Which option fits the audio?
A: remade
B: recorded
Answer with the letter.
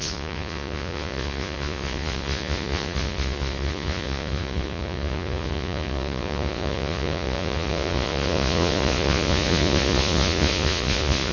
A